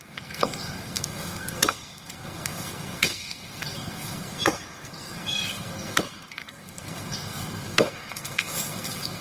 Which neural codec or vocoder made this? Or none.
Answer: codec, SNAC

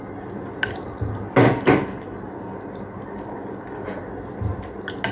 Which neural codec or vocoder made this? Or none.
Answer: none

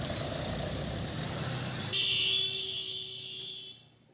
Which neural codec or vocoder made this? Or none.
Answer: none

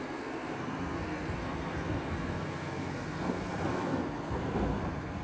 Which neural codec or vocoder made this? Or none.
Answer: codec, SNAC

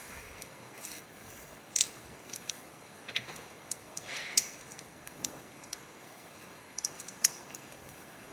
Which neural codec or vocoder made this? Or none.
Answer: codec, SNAC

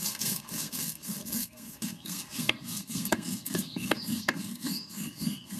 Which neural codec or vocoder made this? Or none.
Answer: codec, SNAC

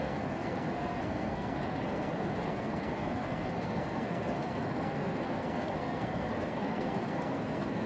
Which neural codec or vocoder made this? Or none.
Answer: codec, SNAC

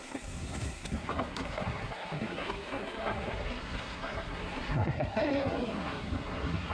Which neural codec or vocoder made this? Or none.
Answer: codec, SNAC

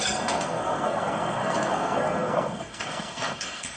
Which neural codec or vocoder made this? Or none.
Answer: codec, SNAC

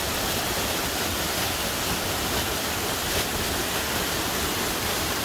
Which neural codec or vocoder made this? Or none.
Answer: none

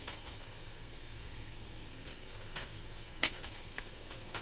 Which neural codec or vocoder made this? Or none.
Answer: codec, SNAC